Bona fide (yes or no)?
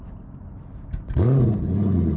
yes